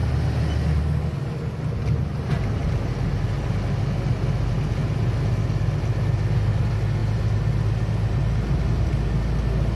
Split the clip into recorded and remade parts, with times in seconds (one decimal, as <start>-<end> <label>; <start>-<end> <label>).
0.0-9.8 recorded